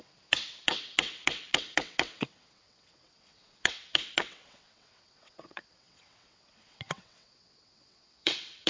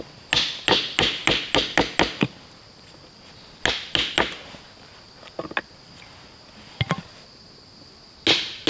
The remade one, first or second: first